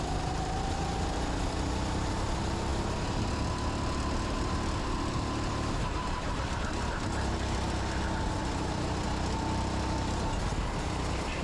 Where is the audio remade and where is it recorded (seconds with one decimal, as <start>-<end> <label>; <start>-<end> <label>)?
0.0-11.4 recorded